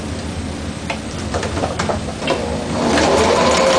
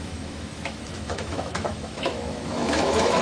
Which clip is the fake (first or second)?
second